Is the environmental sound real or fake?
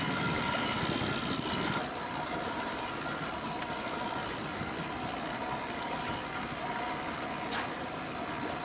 real